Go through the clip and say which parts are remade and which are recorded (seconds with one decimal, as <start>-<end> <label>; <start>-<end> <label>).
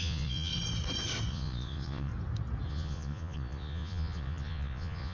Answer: 0.0-0.5 remade; 0.5-1.3 recorded; 1.3-2.1 remade; 2.1-2.7 recorded; 2.7-5.1 remade